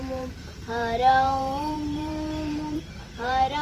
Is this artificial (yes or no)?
yes